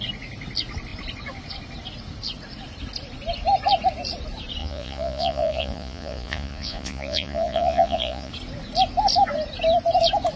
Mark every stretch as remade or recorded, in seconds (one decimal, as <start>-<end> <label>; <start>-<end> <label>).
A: 0.0-4.6 recorded; 4.6-8.3 remade; 8.3-10.4 recorded